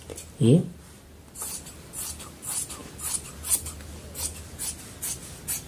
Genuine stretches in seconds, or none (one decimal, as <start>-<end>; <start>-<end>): 0.0-0.6; 1.4-2.8; 3.9-5.7